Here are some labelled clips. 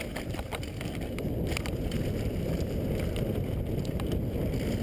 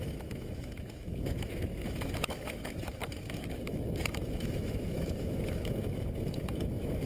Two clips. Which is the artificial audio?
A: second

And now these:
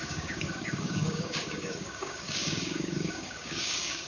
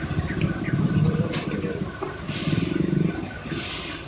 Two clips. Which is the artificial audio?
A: first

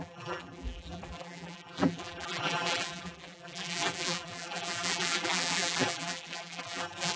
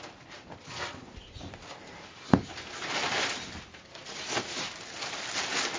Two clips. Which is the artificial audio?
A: first